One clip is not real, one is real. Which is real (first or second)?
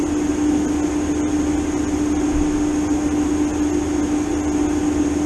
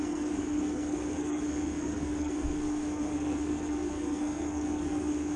first